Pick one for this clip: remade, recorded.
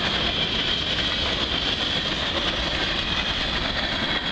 recorded